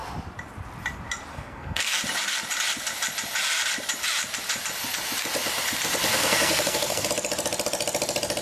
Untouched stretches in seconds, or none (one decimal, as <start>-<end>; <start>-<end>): 0.0-1.3; 2.0-6.1; 7.1-8.4